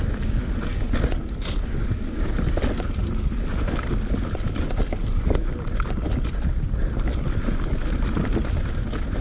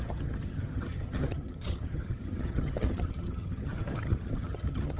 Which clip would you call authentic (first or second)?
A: first